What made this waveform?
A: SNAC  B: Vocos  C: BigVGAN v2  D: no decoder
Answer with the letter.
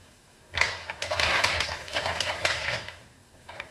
A